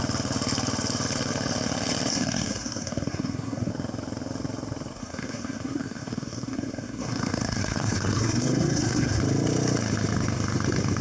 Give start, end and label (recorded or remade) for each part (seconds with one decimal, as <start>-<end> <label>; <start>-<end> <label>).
0.0-2.1 recorded; 2.1-3.7 remade; 3.7-5.0 recorded; 5.0-9.2 remade; 9.2-11.0 recorded